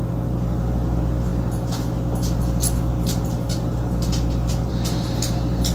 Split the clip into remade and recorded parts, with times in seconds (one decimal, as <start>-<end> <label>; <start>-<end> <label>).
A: 0.0-5.7 recorded